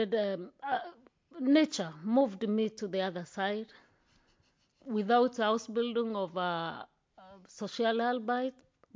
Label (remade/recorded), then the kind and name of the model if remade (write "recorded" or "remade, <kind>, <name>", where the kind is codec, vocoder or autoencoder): recorded